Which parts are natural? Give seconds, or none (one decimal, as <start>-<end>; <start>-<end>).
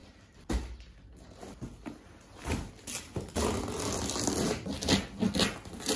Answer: 0.0-6.0